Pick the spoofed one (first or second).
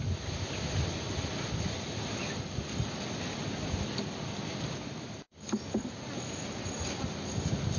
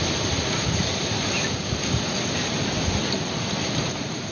second